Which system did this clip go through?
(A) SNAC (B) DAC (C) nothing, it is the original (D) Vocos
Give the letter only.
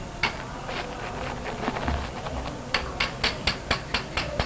C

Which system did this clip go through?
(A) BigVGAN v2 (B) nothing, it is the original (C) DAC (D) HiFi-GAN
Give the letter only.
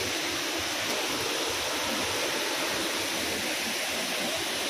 B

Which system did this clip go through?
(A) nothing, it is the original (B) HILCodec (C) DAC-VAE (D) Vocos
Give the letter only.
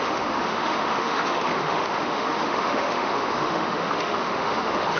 C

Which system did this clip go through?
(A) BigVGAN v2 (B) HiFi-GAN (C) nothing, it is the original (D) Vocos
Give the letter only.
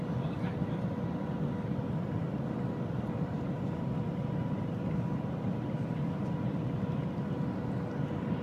C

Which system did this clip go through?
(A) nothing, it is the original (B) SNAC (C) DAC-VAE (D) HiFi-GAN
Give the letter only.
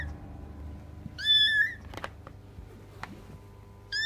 A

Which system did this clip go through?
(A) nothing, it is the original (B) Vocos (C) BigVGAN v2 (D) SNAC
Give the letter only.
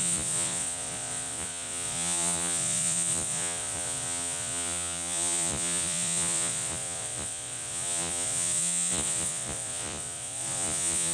B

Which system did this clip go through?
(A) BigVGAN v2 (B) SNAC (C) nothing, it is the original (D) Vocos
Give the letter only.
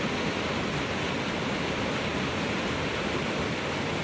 C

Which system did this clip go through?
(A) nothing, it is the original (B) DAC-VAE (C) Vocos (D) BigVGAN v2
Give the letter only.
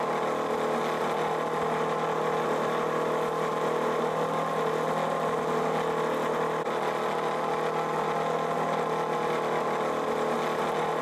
A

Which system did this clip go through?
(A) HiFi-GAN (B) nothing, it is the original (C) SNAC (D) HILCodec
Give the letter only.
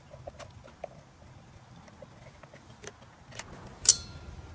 B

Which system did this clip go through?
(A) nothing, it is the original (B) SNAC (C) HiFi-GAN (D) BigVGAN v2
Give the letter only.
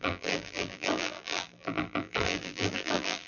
D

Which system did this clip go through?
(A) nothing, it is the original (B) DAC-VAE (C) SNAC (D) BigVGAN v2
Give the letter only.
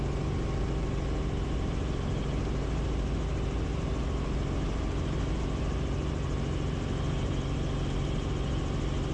A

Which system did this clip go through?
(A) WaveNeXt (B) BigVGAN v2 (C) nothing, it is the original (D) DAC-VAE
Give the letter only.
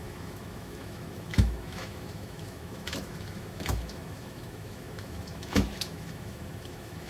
D